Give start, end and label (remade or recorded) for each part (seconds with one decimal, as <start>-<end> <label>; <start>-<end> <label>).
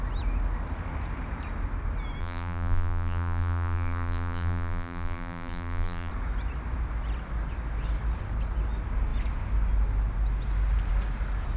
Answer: 0.0-2.2 recorded; 2.2-6.1 remade; 6.1-11.6 recorded